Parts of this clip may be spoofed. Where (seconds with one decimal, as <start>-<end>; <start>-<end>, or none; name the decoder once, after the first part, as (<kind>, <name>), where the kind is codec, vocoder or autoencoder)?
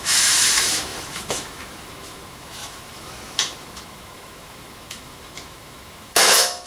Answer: 0.0-6.7 (autoencoder, DAC-VAE)